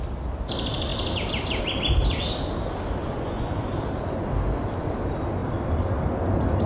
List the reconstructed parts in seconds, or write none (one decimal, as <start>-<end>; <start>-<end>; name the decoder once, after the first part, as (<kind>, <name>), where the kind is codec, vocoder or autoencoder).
3.0-3.7 (vocoder, Vocos)